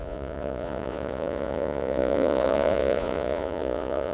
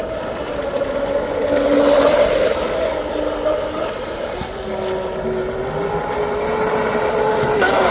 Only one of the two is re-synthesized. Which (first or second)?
first